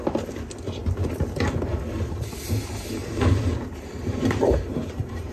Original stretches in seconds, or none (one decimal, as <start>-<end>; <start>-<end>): 0.0-3.0